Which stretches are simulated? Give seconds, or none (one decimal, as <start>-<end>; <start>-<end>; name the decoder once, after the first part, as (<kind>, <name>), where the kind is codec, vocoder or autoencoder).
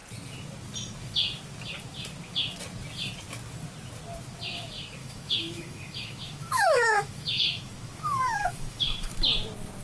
5.0-9.1 (autoencoder, DAC-VAE)